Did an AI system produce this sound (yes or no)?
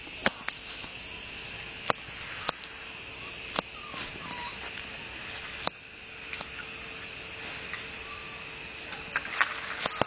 no